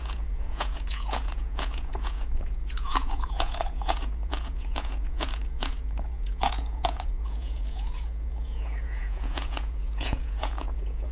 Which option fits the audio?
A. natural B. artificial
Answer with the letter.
B